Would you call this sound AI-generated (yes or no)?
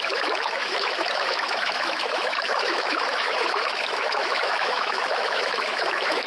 yes